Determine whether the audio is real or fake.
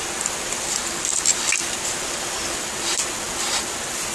real